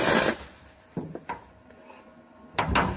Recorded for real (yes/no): yes